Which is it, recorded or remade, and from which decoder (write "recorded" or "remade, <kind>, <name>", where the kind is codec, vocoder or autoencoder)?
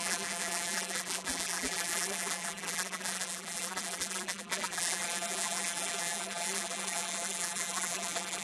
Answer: remade, vocoder, BigVGAN v2